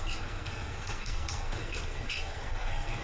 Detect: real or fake fake